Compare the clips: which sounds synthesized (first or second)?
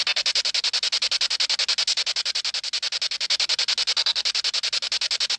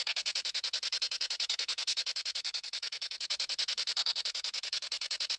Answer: second